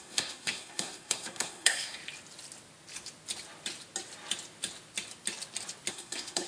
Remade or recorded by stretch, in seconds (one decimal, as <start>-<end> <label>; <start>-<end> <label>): 0.0-2.0 remade; 2.0-5.9 recorded; 5.9-6.5 remade